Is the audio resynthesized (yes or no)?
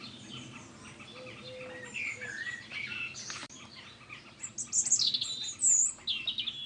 no